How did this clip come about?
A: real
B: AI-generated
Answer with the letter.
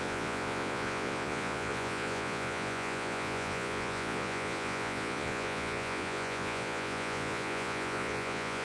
B